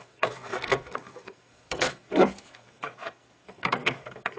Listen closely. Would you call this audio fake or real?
fake